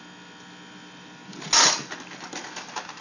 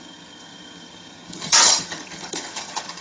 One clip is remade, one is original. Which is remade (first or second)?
second